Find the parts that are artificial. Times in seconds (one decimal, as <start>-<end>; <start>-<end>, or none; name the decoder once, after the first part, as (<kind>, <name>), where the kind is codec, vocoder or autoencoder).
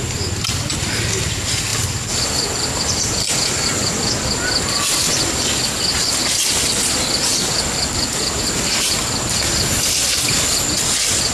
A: none